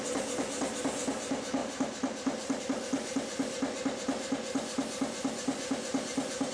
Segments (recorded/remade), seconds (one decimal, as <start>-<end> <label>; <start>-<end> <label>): 0.0-1.6 recorded; 1.6-2.6 remade; 2.6-6.5 recorded